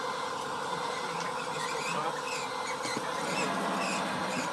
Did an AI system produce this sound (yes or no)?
no